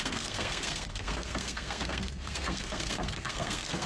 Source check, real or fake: fake